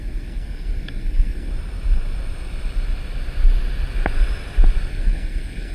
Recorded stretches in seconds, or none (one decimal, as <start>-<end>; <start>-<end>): 1.5-4.9